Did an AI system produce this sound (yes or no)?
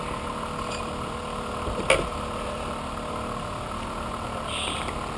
no